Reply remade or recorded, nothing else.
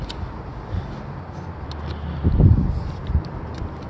recorded